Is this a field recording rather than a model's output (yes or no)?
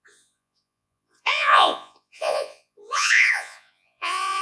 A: no